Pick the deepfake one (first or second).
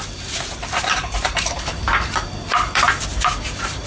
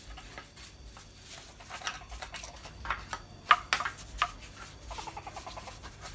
first